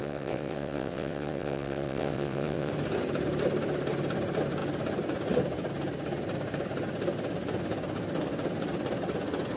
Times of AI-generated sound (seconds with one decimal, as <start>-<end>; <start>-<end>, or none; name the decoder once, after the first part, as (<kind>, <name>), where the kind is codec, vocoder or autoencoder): 0.0-2.7 (vocoder, WaveNeXt)